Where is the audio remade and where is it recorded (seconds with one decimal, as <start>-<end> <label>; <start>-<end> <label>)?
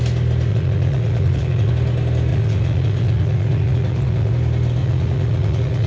0.0-0.5 recorded; 0.5-1.7 remade; 1.7-2.3 recorded; 2.3-4.3 remade; 4.3-4.8 recorded; 4.8-5.9 remade